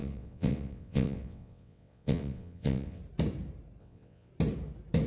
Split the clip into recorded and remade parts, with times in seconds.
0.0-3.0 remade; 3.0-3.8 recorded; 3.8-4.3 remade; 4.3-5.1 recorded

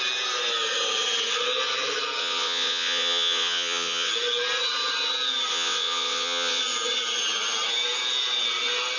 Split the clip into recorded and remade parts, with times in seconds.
0.0-2.2 recorded; 2.2-4.1 remade; 4.1-5.5 recorded; 5.5-6.6 remade; 6.6-9.0 recorded

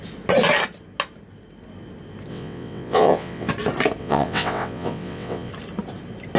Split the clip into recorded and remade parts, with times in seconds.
0.0-2.3 recorded; 2.3-3.5 remade; 3.5-4.0 recorded; 4.0-5.5 remade; 5.5-6.4 recorded

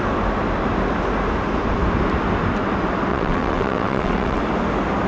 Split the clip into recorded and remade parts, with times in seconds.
0.0-3.1 recorded; 3.1-4.4 remade; 4.4-5.1 recorded

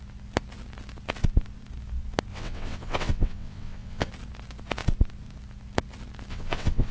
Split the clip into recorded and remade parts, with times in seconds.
0.0-2.3 recorded; 2.3-4.1 remade; 4.1-6.3 recorded; 6.3-6.9 remade

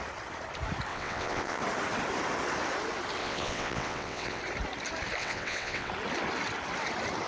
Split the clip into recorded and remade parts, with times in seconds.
0.0-0.9 recorded; 0.9-1.6 remade; 1.6-3.2 recorded; 3.2-4.4 remade; 4.4-5.2 recorded; 5.2-5.9 remade; 5.9-7.3 recorded